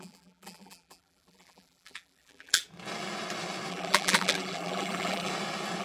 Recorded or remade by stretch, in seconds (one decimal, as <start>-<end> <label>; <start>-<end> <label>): 0.0-2.6 remade; 2.6-3.7 recorded; 3.7-5.3 remade; 5.3-5.8 recorded